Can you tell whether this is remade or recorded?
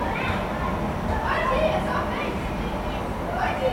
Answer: recorded